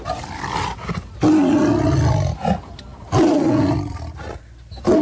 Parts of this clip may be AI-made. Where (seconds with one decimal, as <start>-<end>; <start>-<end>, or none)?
none